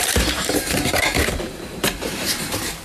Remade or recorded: remade